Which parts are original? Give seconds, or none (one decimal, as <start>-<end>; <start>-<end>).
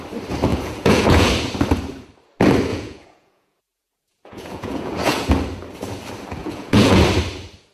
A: 0.0-0.5; 1.3-2.7; 5.3-6.4; 7.0-7.7